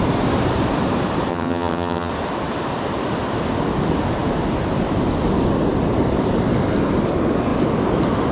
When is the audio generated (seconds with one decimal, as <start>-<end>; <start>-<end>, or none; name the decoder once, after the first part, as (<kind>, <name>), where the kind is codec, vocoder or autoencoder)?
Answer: 1.3-2.1 (vocoder, HiFi-GAN)